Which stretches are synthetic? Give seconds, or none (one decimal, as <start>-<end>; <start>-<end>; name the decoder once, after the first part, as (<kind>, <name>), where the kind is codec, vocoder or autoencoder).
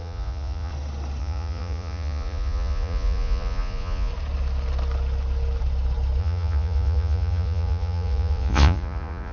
0.0-0.7 (vocoder, Vocos); 1.2-4.1; 6.2-9.3